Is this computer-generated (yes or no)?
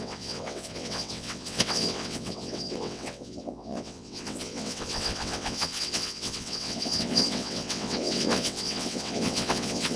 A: yes